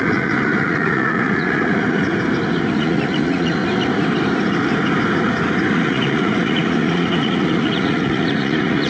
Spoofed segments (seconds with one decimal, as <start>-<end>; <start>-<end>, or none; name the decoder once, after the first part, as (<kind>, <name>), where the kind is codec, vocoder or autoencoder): 0.0-2.1 (vocoder, Vocos); 2.7-3.6; 5.7-8.9